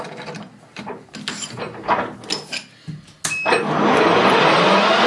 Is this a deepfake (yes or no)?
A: no